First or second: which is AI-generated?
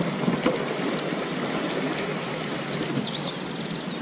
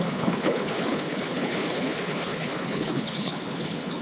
second